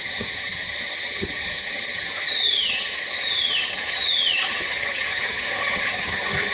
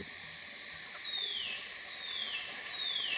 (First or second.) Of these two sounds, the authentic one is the second